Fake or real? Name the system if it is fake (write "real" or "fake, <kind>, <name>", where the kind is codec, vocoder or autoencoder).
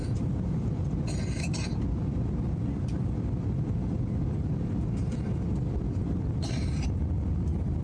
fake, vocoder, BigVGAN v2